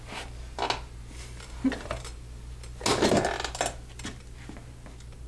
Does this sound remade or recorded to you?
recorded